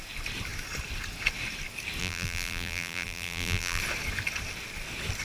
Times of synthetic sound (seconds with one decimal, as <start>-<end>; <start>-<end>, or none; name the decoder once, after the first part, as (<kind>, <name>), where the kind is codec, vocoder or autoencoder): 2.0-3.8 (vocoder, BigVGAN v2)